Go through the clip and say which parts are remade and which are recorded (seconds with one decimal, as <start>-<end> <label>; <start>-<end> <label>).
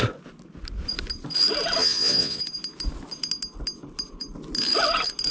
0.0-1.8 recorded; 1.8-2.4 remade; 2.4-5.3 recorded